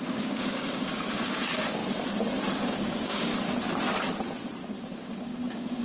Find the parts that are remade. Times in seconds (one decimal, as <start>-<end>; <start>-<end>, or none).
0.0-1.8; 2.5-3.3; 4.8-5.8

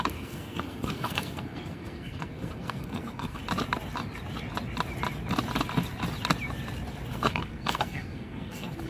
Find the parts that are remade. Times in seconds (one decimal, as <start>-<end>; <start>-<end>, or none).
0.0-3.4; 7.1-8.9

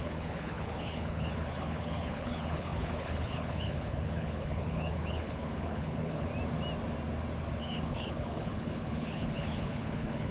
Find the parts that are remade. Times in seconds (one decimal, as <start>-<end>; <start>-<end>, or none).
0.0-6.3; 7.6-10.3

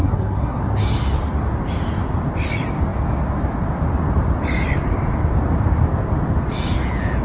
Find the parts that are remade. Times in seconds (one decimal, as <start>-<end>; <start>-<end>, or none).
0.0-0.6